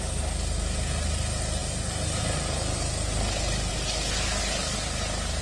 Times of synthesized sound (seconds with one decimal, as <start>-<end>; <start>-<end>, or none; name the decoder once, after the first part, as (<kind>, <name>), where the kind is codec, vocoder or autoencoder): none